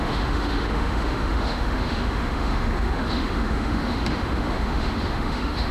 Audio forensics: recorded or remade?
remade